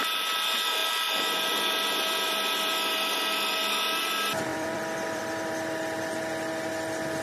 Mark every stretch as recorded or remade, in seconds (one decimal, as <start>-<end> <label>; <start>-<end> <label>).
0.0-4.5 recorded; 4.5-5.2 remade; 5.2-7.2 recorded